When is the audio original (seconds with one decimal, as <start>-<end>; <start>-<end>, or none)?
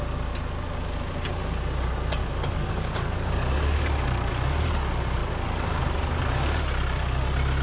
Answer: 0.0-2.2; 4.3-5.2; 5.8-7.6